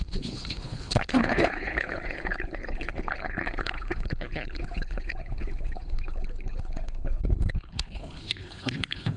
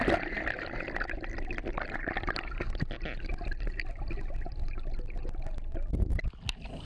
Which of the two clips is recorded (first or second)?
second